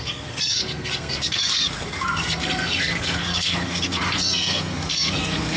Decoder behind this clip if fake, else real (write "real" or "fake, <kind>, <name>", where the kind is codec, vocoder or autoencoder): fake, codec, SNAC